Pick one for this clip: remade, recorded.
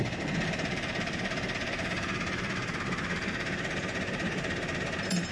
remade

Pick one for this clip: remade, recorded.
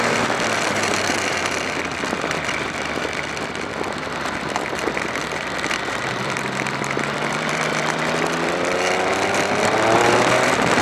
remade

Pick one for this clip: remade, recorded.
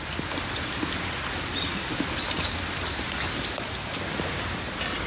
recorded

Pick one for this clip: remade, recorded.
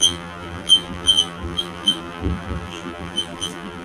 remade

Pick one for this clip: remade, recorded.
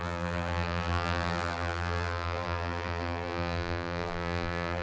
remade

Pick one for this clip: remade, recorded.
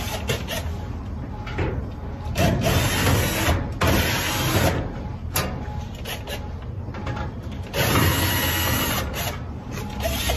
recorded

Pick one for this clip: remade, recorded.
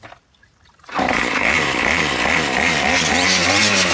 remade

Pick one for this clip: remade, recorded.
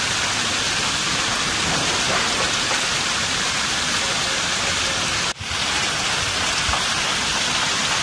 recorded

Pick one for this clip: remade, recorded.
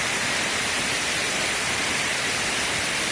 remade